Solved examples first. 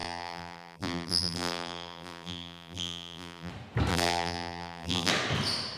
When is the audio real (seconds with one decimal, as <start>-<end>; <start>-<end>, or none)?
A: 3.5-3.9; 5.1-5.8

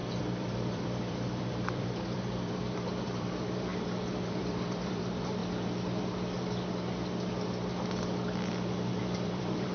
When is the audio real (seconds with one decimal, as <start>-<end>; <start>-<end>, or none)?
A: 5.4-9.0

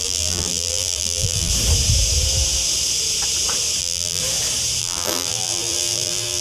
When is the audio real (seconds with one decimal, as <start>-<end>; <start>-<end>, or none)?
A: 1.5-3.8; 4.2-4.8

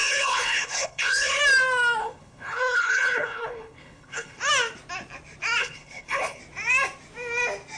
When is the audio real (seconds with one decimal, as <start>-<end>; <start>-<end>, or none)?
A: 1.4-2.0; 4.4-5.6; 6.4-7.8

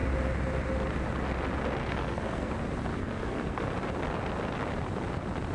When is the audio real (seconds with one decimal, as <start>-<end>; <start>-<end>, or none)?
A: 0.0-1.8; 2.5-2.9; 3.7-5.5

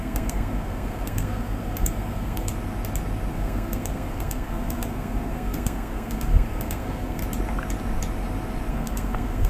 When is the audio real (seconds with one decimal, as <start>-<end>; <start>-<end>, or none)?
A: 2.5-3.3; 7.2-8.7

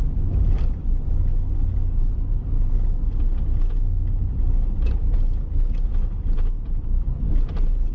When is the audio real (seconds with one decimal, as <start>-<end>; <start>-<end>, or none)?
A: 0.0-7.9

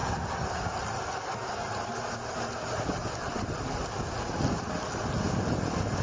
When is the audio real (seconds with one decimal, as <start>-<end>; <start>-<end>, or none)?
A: 0.0-6.0